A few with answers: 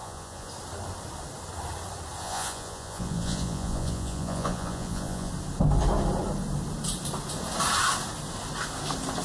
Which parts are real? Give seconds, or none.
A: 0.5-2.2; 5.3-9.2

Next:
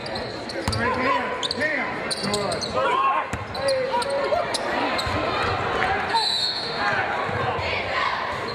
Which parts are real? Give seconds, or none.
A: 0.0-6.1; 6.8-8.5

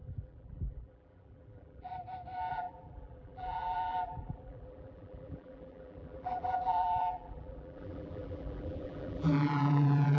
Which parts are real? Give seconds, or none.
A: 1.9-2.5

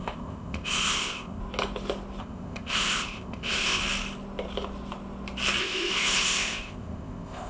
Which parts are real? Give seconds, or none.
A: 1.4-2.2; 3.8-5.6